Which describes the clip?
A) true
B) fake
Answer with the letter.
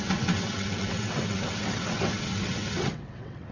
B